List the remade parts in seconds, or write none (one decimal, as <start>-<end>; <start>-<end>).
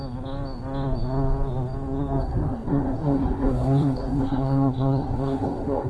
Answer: 2.2-5.9